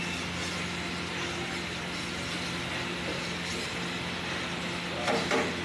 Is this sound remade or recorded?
recorded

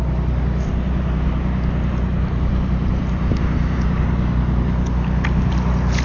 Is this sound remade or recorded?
recorded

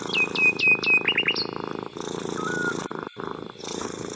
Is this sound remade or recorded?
recorded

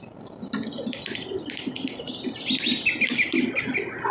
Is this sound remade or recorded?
recorded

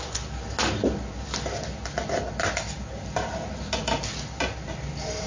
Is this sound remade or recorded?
recorded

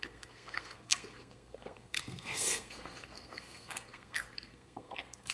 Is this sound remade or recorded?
remade